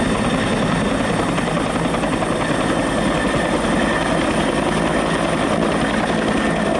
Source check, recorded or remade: recorded